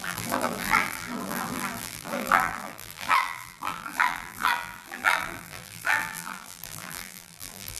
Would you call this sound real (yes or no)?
no